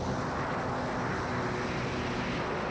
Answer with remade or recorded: recorded